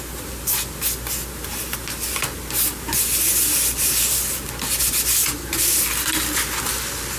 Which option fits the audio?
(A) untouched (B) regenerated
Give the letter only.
A